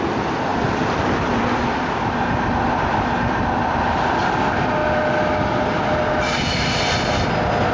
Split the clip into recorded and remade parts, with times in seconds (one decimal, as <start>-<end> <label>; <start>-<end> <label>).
0.0-0.5 recorded; 0.5-4.1 remade; 4.1-7.7 recorded